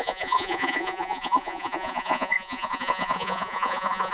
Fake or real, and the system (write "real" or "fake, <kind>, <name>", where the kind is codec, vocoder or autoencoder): fake, vocoder, Vocos